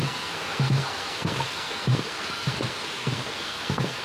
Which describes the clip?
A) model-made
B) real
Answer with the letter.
A